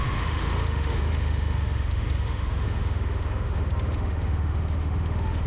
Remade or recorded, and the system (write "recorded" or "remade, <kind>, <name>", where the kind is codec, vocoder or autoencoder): remade, autoencoder, DAC-VAE